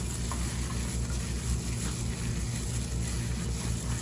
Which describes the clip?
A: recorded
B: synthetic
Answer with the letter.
A